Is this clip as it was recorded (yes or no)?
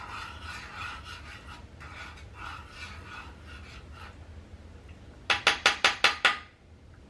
yes